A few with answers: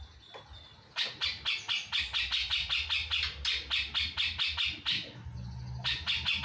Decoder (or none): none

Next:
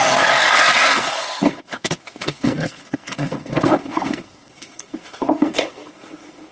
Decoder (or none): codec, SNAC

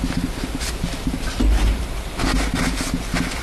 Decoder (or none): none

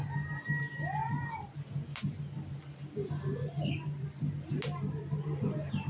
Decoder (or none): none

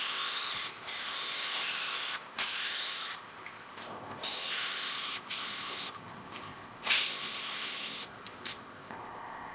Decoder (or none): codec, ZipCodec